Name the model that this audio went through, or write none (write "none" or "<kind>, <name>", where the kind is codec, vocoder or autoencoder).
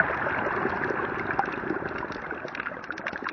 none